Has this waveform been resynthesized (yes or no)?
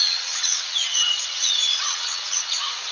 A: yes